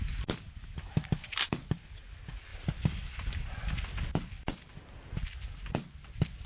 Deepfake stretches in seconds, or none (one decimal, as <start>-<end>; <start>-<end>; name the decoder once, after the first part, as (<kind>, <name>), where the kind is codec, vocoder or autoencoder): none